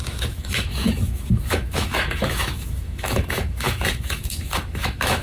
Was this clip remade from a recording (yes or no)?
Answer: yes